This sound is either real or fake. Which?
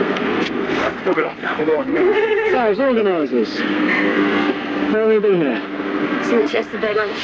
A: fake